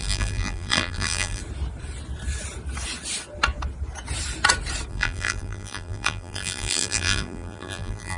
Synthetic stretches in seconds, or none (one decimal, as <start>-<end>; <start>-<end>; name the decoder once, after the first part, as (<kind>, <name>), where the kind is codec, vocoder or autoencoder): 0.0-1.4 (vocoder, BigVGAN v2); 4.9-8.2